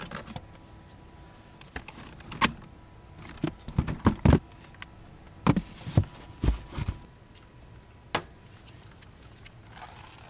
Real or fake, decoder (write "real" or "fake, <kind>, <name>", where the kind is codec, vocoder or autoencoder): real